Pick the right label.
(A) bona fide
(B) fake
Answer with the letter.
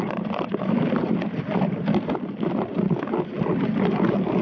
A